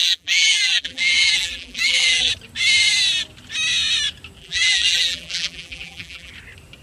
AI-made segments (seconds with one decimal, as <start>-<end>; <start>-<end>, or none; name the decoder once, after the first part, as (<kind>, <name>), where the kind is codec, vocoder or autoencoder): 0.0-2.3 (vocoder, BigVGAN v2); 4.4-6.3